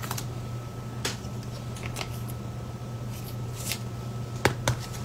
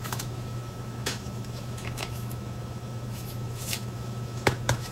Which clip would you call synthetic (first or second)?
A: second